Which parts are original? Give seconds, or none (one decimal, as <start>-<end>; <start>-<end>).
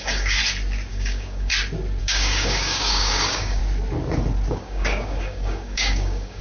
0.4-0.9; 1.5-2.0; 3.6-4.5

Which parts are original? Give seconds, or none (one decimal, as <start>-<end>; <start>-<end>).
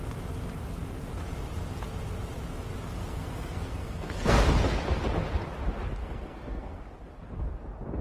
0.0-3.0; 4.4-6.0; 6.8-8.0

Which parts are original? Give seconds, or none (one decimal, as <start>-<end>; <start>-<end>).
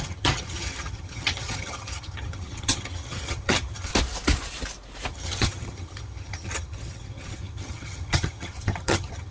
3.9-5.1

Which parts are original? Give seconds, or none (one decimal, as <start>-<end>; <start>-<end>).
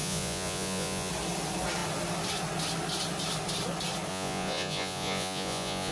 1.1-4.1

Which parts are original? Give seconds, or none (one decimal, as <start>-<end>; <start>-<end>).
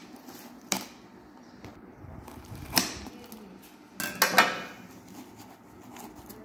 0.0-1.7; 3.1-6.4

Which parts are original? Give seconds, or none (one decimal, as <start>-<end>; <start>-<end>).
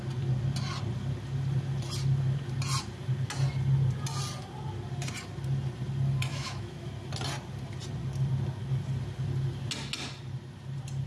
0.0-6.3; 6.9-11.1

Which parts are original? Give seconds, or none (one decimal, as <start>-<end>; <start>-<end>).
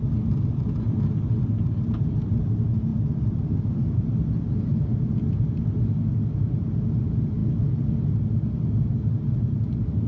0.0-10.1